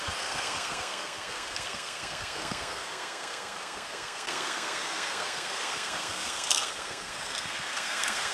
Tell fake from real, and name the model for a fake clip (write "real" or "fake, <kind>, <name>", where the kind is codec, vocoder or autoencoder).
fake, codec, SNAC